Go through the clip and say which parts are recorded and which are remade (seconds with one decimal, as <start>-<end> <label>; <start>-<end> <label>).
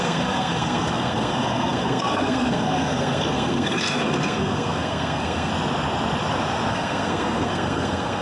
0.0-5.5 remade; 5.5-6.7 recorded; 6.7-8.2 remade